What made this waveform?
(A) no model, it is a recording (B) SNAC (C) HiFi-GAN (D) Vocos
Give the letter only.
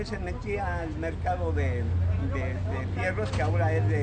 A